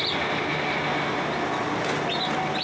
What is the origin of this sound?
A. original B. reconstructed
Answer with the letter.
A